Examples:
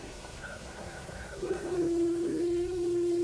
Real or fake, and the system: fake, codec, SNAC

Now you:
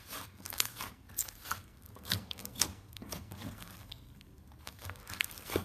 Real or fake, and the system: fake, codec, SNAC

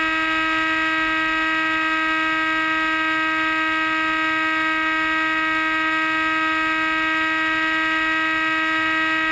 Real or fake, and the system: real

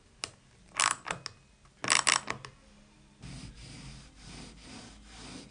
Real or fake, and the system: real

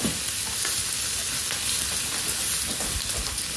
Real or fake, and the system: real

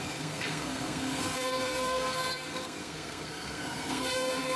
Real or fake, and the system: fake, codec, SNAC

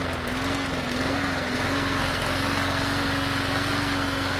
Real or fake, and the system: fake, codec, SNAC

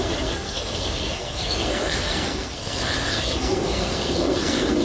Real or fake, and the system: fake, codec, SNAC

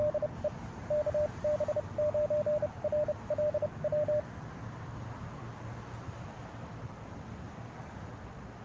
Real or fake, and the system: real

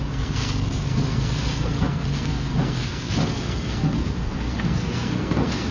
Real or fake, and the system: fake, codec, SNAC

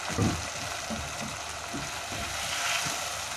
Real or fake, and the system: real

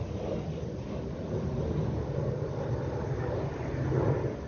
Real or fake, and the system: real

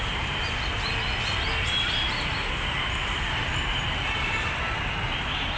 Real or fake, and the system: real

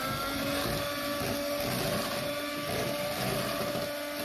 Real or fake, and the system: real